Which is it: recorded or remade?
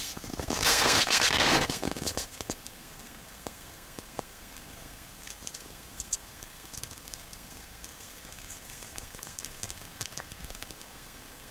remade